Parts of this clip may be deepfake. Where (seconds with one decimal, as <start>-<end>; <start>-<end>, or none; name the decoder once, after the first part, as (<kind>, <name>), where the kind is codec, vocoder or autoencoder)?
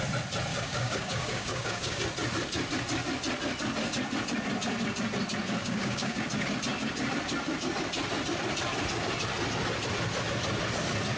0.5-2.0 (codec, DAC); 5.6-6.2